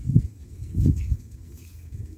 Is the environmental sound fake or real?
fake